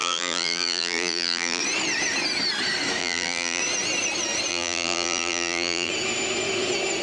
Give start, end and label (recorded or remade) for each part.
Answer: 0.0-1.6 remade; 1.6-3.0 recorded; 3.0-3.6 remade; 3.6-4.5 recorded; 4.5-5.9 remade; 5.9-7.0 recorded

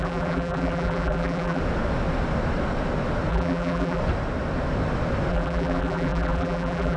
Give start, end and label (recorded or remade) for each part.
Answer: 0.0-1.6 remade; 1.6-3.3 recorded; 3.3-4.0 remade; 4.0-5.3 recorded; 5.3-7.0 remade

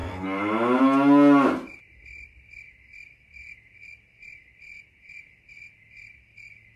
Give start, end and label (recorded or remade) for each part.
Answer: 0.0-0.8 remade; 0.8-6.8 recorded

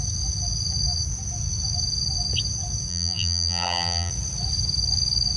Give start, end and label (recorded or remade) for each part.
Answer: 0.0-2.9 recorded; 2.9-4.1 remade; 4.1-5.4 recorded

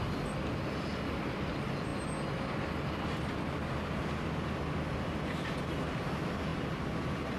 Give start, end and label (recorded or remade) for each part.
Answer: 0.0-7.4 recorded

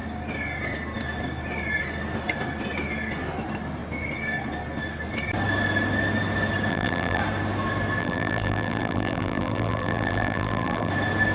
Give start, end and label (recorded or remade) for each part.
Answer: 0.0-6.7 recorded; 6.7-7.2 remade; 7.2-8.0 recorded; 8.0-10.9 remade; 10.9-11.3 recorded